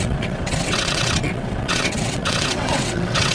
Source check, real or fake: fake